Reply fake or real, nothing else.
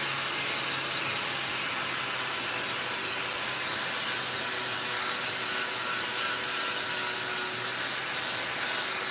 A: real